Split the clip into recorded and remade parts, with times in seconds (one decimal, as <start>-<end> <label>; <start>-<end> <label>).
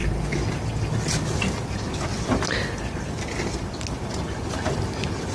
0.0-5.3 recorded